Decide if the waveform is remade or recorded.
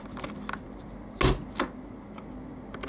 recorded